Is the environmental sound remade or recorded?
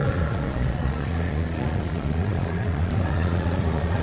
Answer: remade